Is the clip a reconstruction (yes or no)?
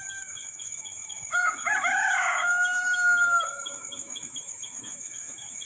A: yes